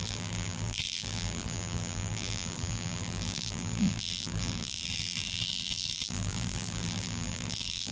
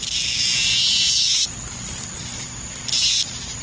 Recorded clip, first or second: second